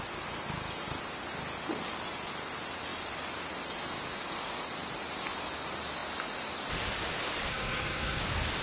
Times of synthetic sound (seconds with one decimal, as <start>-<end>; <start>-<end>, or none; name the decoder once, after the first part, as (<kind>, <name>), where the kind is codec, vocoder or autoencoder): 7.5-8.2 (codec, SNAC)